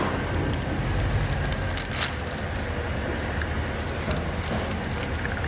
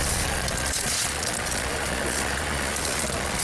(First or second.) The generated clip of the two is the second